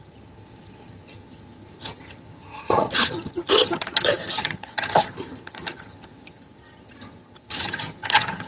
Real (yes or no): no